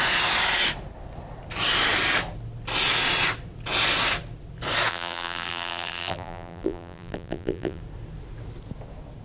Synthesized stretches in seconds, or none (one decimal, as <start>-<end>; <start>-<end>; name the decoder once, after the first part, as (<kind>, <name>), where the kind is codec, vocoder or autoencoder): 4.9-7.8 (vocoder, BigVGAN v2)